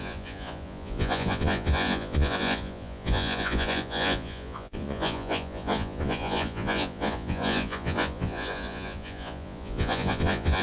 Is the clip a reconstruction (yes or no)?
yes